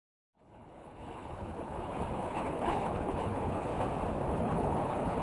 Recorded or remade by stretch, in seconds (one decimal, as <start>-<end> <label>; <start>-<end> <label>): 0.0-3.7 remade; 3.7-4.3 recorded; 4.3-5.2 remade